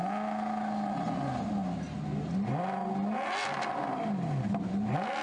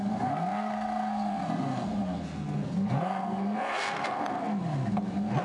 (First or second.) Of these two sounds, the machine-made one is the second